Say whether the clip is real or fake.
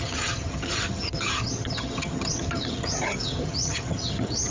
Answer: fake